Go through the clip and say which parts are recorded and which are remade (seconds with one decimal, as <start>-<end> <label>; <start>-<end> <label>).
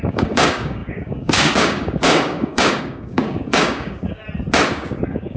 0.0-4.2 remade; 4.2-4.7 recorded; 4.7-5.4 remade